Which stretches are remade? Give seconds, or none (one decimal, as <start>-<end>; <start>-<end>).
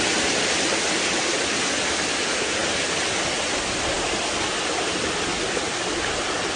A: none